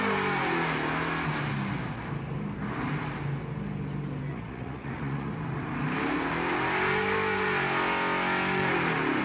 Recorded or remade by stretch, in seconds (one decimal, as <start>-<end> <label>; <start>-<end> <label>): 0.0-4.3 recorded; 4.3-5.3 remade; 5.3-9.2 recorded